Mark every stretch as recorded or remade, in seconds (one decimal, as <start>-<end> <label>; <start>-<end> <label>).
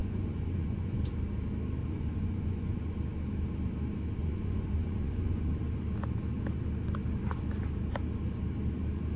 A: 0.0-1.0 remade; 1.0-1.8 recorded; 1.8-2.9 remade; 2.9-4.2 recorded; 4.2-5.6 remade; 5.6-9.2 recorded